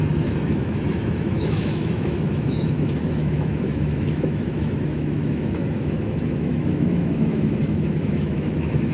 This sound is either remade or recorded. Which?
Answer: remade